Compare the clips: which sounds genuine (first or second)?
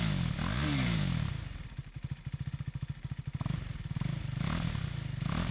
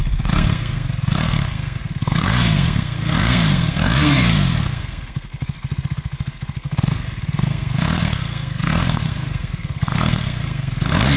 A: first